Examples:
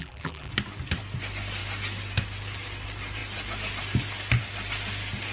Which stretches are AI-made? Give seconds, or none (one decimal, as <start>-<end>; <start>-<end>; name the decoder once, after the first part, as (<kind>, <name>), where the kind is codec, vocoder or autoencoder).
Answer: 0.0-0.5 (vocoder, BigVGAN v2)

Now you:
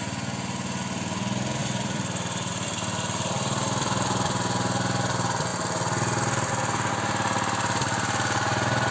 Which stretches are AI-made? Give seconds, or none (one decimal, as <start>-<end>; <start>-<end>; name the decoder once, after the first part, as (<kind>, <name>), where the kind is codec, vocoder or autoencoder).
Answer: 1.6-2.5 (vocoder, BigVGAN v2)

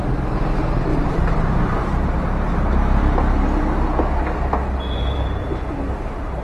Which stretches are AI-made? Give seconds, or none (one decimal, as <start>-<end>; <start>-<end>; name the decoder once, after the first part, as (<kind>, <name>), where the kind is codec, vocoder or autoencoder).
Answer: 0.9-3.0 (vocoder, BigVGAN v2)

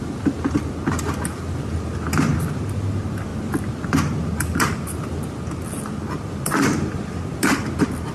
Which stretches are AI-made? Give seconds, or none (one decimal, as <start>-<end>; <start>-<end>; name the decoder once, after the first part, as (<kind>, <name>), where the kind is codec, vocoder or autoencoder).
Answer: none

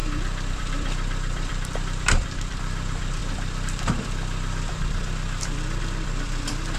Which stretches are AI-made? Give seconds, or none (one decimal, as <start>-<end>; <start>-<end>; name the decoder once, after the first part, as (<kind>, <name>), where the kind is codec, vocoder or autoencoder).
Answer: 0.5-6.8 (vocoder, BigVGAN v2)